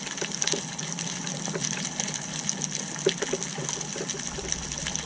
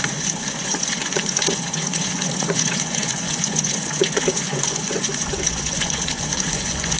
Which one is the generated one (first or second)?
second